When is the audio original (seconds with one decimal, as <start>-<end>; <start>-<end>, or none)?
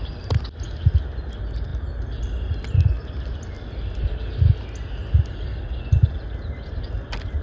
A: 0.0-7.4